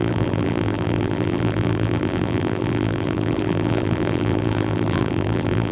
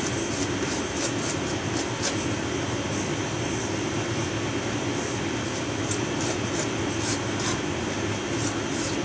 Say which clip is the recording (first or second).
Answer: second